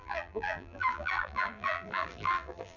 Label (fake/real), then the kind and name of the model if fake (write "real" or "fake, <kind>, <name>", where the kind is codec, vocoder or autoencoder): fake, vocoder, BigVGAN v2